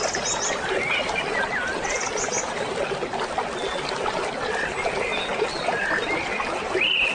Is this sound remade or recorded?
recorded